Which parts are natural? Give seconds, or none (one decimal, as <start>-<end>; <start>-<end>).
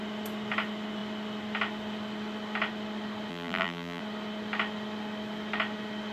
0.0-3.3; 4.0-6.1